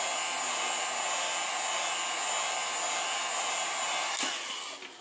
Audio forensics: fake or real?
real